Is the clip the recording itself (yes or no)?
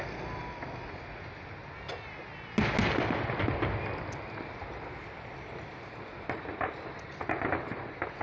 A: yes